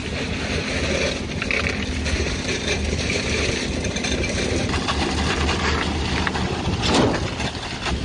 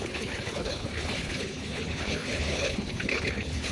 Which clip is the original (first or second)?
first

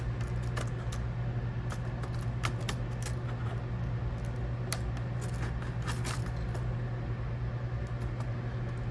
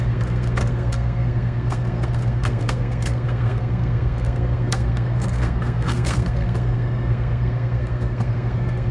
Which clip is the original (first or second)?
first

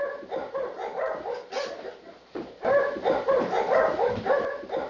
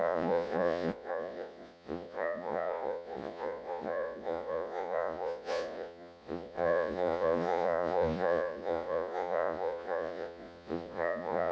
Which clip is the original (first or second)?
first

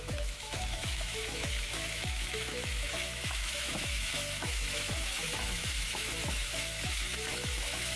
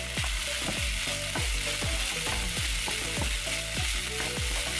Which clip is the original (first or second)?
second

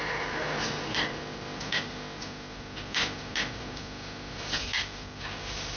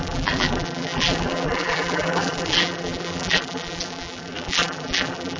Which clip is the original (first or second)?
first